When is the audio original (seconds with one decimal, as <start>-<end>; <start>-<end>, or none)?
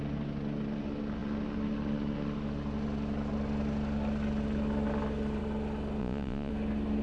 0.0-6.0; 6.5-7.0